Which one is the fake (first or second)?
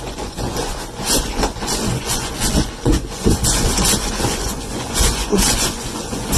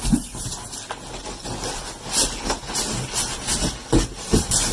first